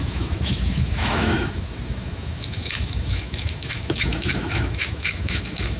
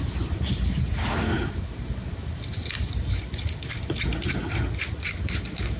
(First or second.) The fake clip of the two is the first